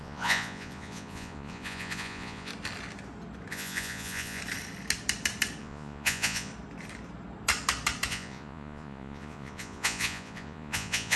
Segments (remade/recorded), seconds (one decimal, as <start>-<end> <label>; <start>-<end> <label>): 0.0-2.5 remade; 2.5-3.5 recorded; 3.5-4.4 remade; 4.4-5.6 recorded; 5.6-6.5 remade; 6.5-8.1 recorded; 8.1-11.2 remade